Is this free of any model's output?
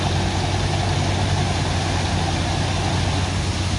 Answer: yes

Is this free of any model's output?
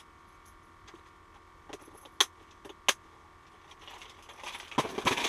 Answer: yes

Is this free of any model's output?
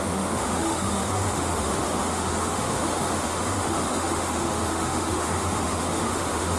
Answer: no